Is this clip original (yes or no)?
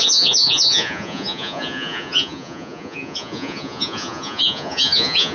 no